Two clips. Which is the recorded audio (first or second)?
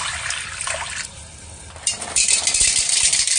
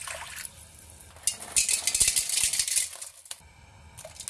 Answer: second